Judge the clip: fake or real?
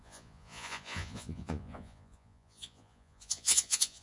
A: fake